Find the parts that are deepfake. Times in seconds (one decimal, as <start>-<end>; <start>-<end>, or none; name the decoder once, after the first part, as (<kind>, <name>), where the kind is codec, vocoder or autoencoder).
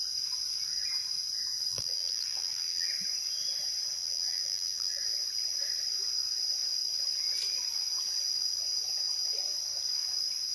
1.7-2.9 (vocoder, BigVGAN v2); 4.0-5.0